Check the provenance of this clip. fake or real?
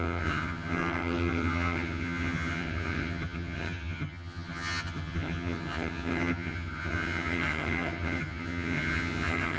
fake